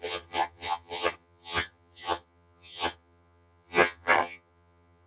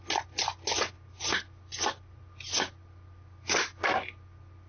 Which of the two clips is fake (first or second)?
first